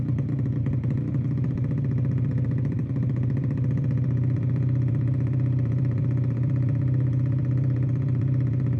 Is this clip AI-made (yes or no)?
yes